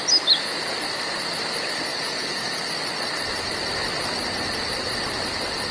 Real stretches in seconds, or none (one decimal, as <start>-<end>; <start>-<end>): 0.0-1.9; 2.6-5.7